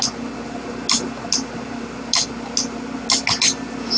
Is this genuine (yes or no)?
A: yes